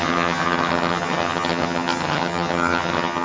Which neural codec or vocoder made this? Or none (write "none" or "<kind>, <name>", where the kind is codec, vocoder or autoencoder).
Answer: vocoder, HiFi-GAN